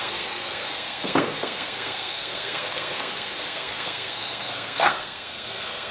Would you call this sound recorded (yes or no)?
no